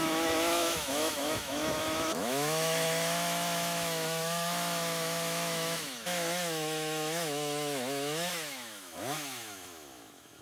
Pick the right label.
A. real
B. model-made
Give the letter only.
B